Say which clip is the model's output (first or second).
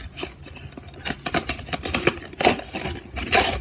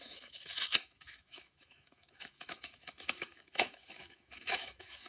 second